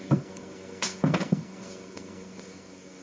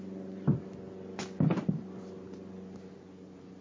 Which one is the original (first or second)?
second